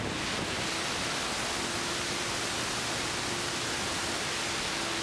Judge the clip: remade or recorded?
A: recorded